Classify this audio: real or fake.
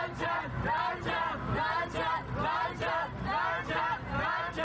real